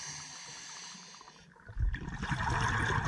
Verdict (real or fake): real